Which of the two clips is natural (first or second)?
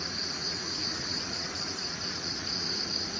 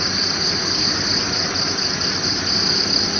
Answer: second